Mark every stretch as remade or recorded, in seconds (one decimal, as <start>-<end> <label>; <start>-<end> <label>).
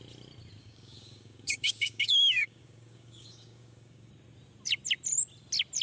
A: 0.0-0.6 recorded; 0.6-4.1 remade; 4.1-5.8 recorded